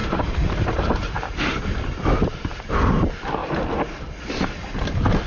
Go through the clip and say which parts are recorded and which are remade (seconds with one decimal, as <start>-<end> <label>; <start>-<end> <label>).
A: 0.0-1.6 remade; 1.6-5.3 recorded